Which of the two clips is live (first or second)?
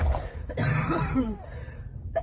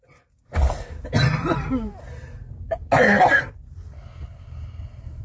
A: second